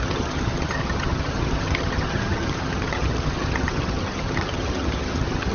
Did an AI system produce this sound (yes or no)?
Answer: yes